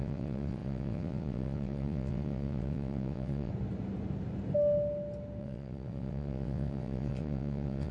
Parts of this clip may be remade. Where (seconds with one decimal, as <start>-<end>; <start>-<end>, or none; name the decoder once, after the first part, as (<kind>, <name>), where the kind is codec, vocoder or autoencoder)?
0.0-3.5 (vocoder, WaveNeXt); 5.4-7.9

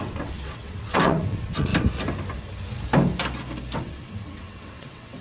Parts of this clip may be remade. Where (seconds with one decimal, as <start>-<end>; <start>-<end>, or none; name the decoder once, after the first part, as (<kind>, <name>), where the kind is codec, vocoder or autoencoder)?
0.0-1.7 (vocoder, WaveNeXt); 3.8-5.2

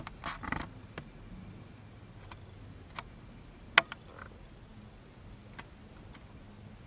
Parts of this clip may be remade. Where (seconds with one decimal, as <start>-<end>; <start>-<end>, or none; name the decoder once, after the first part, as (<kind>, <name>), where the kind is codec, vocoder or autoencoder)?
none

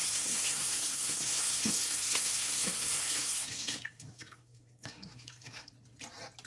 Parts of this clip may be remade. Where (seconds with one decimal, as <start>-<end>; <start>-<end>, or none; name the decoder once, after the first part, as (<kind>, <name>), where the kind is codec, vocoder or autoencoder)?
0.0-5.7 (codec, SNAC)

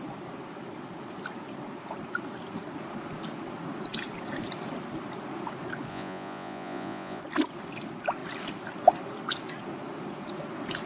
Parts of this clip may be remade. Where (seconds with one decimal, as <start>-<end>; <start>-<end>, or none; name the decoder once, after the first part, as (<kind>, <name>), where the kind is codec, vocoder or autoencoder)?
5.9-7.2 (vocoder, Vocos)

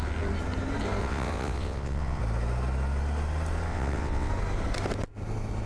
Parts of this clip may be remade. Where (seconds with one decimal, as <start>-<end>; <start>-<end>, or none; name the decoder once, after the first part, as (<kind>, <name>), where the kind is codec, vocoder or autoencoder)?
1.0-2.2 (vocoder, WaveNeXt); 3.7-4.3

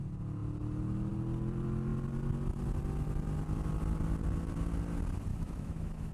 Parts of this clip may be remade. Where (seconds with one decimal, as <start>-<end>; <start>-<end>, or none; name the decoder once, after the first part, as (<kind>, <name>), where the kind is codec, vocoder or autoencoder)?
5.3-6.1 (autoencoder, DAC-VAE)

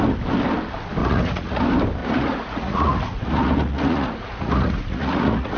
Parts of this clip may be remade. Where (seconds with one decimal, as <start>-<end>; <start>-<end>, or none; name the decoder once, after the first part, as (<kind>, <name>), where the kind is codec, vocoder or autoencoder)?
1.0-1.6 (vocoder, Vocos); 2.0-5.6